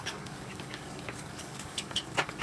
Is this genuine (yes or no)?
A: no